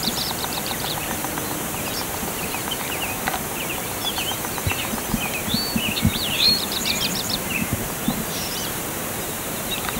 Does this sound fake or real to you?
fake